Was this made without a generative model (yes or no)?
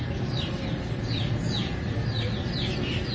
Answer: yes